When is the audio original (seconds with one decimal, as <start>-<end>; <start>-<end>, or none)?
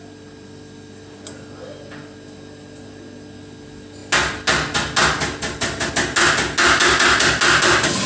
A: 0.0-8.1